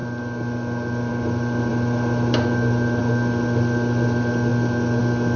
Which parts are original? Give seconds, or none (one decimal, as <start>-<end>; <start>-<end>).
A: 0.0-5.4